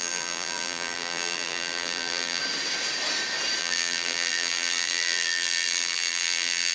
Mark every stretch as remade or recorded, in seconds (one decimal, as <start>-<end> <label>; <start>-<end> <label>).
0.0-2.4 remade; 2.4-3.6 recorded; 3.6-6.7 remade